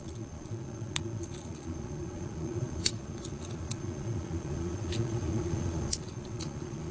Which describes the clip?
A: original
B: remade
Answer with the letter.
B